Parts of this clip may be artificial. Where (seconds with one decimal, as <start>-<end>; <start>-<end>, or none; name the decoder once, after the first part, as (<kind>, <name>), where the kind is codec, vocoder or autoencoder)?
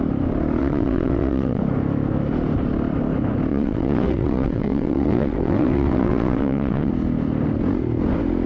0.6-1.6 (vocoder, WaveNeXt); 3.5-6.9